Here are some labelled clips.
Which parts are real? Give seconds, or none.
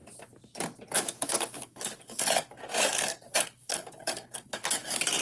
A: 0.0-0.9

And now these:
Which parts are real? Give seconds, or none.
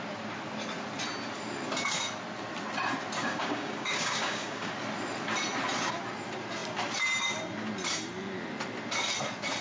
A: 0.0-3.2; 4.7-9.6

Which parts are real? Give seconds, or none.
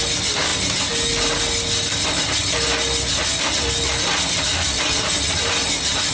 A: 0.0-6.1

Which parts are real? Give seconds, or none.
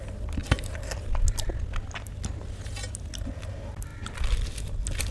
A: 0.0-5.1